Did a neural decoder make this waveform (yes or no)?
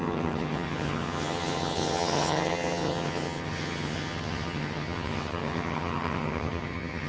yes